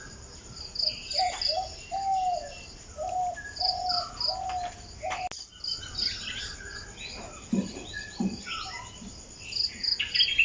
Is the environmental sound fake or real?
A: real